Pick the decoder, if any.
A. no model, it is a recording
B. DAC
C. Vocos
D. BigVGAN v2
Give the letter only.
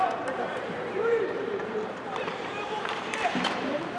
D